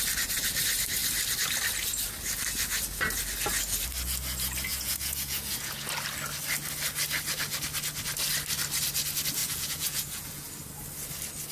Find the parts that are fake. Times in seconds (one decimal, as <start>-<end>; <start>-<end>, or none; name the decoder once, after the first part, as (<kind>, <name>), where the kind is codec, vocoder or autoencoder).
4.7-5.9 (vocoder, Vocos); 9.4-10.5